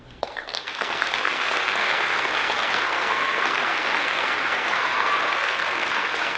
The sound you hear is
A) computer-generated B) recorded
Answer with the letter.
A